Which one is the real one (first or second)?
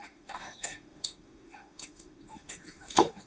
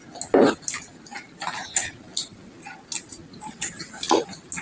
second